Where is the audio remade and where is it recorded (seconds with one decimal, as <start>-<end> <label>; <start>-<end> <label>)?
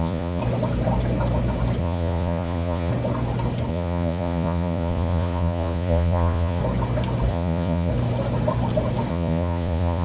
0.0-0.4 remade; 0.4-1.8 recorded; 1.8-2.9 remade; 2.9-3.7 recorded; 3.7-6.6 remade; 6.6-7.3 recorded; 7.3-7.9 remade; 7.9-9.1 recorded; 9.1-10.0 remade